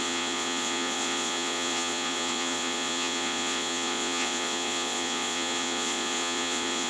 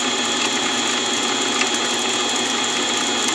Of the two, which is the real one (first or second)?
second